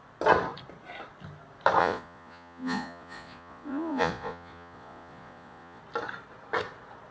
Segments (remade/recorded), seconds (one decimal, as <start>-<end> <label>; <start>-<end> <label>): 0.0-1.8 recorded; 1.8-5.8 remade; 5.8-7.1 recorded